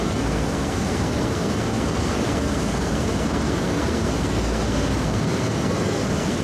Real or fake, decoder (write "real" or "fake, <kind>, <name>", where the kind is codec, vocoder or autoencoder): fake, codec, SNAC